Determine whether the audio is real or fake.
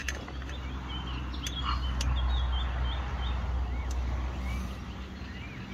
real